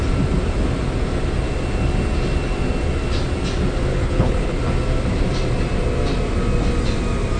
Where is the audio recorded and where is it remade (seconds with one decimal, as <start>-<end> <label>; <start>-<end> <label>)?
0.0-3.9 recorded; 3.9-4.6 remade; 4.6-7.4 recorded